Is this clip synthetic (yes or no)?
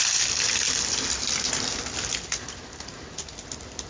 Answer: no